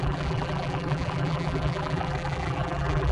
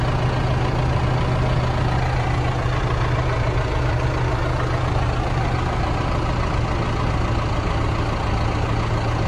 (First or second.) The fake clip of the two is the first